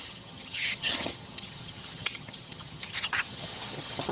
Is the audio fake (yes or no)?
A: yes